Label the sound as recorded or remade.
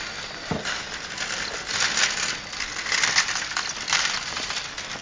recorded